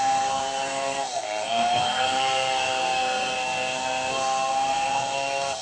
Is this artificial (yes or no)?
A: yes